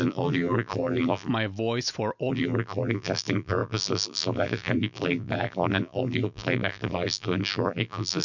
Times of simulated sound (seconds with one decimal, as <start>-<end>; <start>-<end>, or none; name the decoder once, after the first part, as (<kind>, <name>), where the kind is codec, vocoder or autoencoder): 0.0-1.3 (vocoder, BigVGAN v2); 2.3-8.2